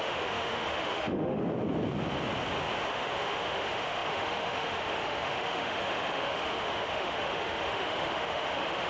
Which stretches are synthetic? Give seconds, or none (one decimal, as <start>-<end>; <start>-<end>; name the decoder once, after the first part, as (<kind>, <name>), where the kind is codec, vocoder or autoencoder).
0.0-1.4 (autoencoder, DAC-VAE); 2.9-8.9